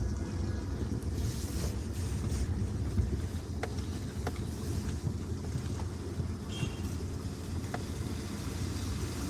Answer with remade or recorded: recorded